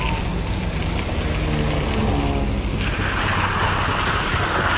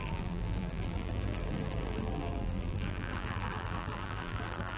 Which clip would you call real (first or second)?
first